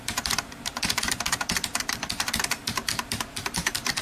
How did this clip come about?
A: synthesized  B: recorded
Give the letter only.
A